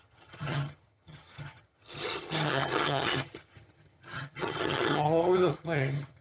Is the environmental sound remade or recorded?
remade